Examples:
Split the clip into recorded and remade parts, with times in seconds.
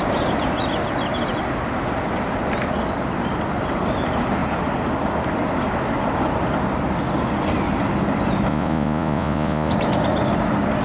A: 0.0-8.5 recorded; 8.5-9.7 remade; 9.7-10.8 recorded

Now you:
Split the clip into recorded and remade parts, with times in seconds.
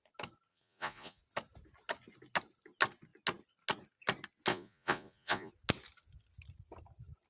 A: 0.0-0.5 recorded; 0.5-1.2 remade; 1.2-4.5 recorded; 4.5-5.5 remade; 5.5-7.3 recorded